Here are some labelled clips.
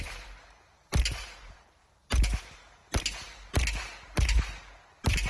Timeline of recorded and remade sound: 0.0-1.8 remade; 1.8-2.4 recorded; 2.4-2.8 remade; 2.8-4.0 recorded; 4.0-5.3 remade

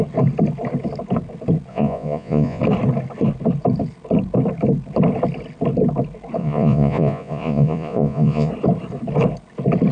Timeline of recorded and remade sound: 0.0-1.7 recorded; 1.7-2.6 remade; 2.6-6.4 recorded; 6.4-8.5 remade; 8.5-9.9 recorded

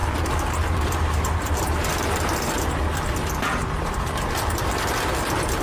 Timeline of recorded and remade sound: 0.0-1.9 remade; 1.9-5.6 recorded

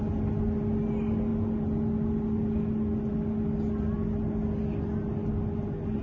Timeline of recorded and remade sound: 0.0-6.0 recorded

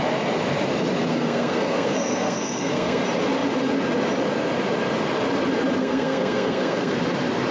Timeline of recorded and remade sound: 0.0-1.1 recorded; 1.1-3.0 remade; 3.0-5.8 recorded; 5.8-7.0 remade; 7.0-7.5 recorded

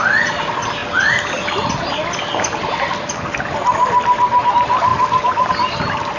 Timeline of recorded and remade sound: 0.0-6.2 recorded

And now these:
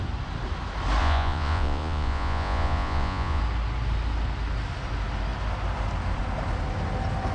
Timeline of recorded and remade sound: 0.0-1.0 recorded; 1.0-3.4 remade; 3.4-7.3 recorded